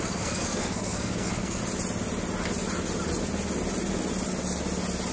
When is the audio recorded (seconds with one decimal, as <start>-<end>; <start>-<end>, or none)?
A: 1.6-5.1